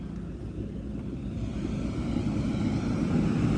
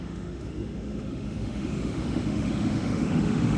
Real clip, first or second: first